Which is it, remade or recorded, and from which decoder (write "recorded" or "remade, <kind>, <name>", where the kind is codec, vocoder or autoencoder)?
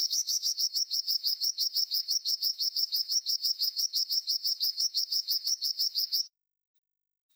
remade, autoencoder, DAC-VAE